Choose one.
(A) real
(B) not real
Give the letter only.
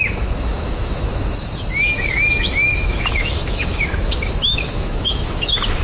B